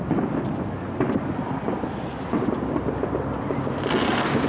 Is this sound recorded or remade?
recorded